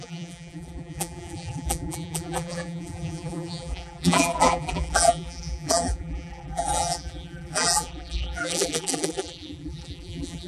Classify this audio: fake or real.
fake